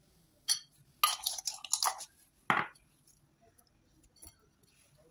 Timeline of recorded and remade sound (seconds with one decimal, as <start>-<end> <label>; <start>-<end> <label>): 0.0-5.1 recorded